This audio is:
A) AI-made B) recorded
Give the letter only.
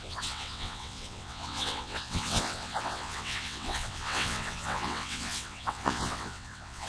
A